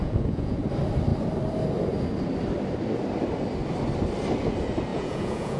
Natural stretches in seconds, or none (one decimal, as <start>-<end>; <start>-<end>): 0.6-4.9